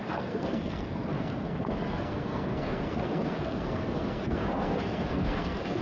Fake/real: fake